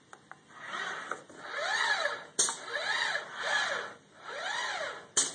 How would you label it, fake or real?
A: real